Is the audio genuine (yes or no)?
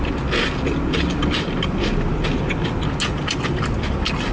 yes